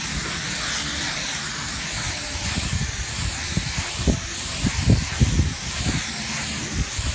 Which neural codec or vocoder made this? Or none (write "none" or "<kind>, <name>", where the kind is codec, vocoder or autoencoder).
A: none